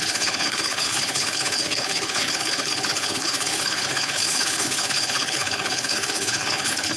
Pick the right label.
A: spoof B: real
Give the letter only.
A